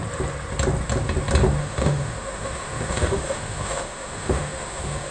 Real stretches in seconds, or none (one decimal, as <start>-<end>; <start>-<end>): 0.0-1.6